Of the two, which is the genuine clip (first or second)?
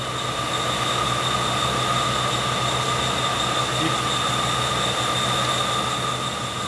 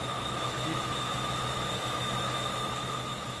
first